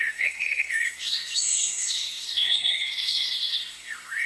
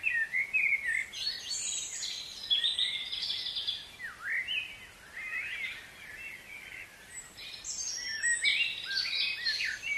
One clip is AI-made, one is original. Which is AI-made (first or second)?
first